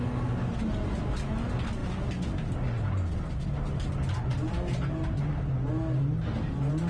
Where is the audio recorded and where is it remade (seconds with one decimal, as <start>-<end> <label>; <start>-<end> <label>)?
0.0-4.3 recorded; 4.3-5.2 remade; 5.2-6.9 recorded